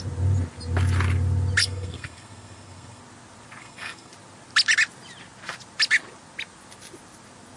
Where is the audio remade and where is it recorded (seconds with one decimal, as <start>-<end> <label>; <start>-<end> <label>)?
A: 0.0-1.6 recorded; 1.6-3.0 remade; 3.0-3.6 recorded; 3.6-4.1 remade; 4.1-7.6 recorded